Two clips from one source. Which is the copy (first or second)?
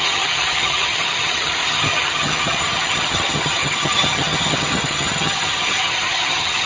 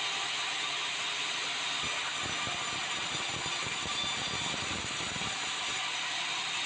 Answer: first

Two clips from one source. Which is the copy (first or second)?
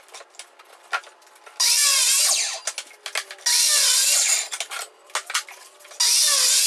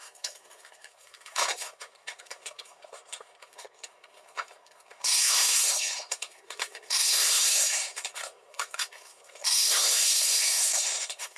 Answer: second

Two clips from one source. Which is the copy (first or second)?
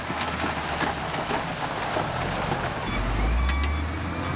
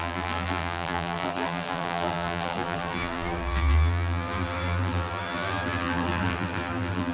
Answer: second